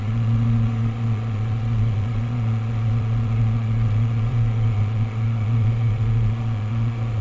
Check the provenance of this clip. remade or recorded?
remade